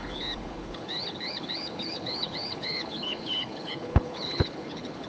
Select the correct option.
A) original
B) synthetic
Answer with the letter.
B